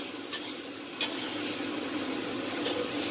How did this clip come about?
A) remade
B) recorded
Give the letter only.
B